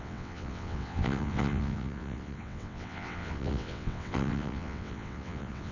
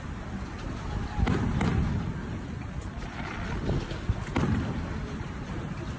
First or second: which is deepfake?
first